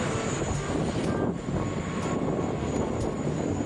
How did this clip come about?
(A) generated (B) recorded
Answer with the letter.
B